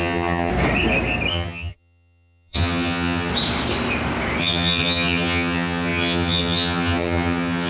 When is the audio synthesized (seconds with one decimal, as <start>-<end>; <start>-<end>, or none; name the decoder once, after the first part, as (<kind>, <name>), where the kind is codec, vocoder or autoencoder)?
0.0-0.5 (vocoder, HiFi-GAN); 1.3-3.3; 4.4-7.7